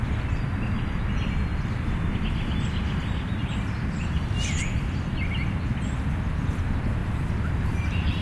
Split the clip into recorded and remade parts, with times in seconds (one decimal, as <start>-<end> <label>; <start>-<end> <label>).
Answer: 0.0-1.5 recorded; 1.5-4.2 remade; 4.2-7.0 recorded; 7.0-8.2 remade